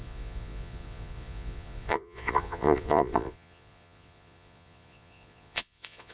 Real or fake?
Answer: fake